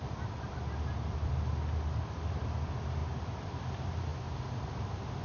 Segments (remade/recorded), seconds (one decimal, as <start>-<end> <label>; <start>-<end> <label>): 0.0-5.2 recorded